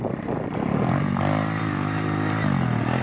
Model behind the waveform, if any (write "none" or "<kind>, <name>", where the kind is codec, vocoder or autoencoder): none